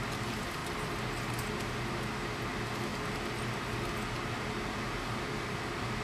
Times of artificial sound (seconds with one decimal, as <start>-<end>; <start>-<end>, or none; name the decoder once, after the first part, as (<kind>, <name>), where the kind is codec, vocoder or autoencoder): none